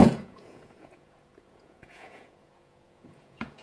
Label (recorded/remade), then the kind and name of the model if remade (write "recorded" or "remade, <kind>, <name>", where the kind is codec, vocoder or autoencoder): remade, vocoder, Vocos